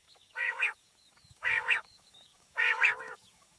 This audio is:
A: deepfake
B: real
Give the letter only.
A